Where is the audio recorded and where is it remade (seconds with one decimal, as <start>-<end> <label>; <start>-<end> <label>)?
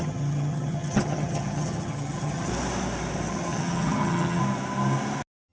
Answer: 0.0-2.5 remade; 2.5-3.3 recorded; 3.3-4.4 remade; 4.4-5.5 recorded